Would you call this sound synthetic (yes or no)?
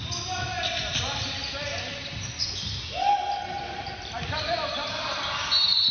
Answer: no